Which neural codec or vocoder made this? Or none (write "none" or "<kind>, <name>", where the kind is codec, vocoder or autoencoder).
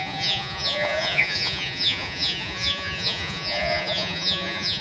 vocoder, Vocos